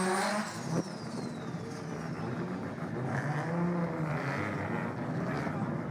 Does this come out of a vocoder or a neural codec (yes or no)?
no